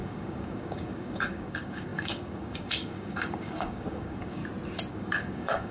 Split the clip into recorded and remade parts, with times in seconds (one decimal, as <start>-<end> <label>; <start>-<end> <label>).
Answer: 0.0-4.4 remade; 4.4-4.9 recorded; 4.9-5.7 remade